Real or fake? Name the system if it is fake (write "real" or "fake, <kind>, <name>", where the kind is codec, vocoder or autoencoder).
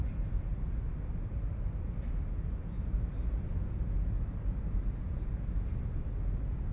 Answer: real